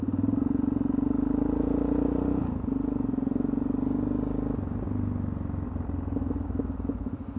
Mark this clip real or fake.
real